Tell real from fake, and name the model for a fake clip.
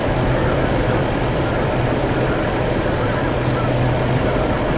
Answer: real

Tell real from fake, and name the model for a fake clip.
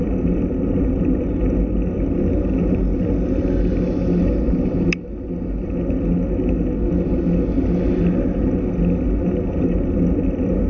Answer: real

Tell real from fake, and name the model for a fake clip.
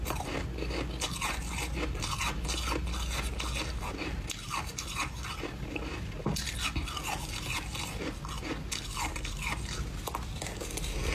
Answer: real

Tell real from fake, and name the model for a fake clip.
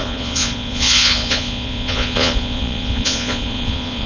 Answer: fake, vocoder, Vocos